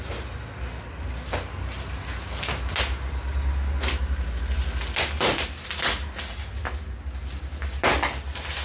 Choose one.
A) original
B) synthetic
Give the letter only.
A